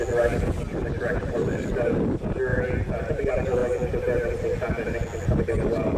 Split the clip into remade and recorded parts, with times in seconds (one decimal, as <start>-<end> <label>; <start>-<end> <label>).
0.0-6.0 recorded